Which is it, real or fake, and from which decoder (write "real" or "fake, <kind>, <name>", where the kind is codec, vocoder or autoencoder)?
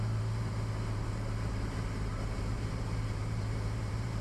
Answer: fake, vocoder, BigVGAN v2